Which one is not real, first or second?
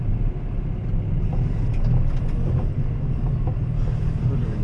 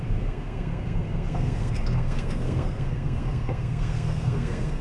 second